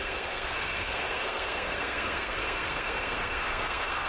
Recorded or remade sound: remade